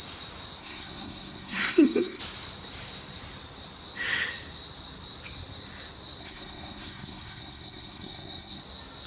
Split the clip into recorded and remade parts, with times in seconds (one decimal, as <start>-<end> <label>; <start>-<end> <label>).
0.0-0.6 recorded; 0.6-2.2 remade; 2.2-6.2 recorded; 6.2-8.6 remade; 8.6-9.1 recorded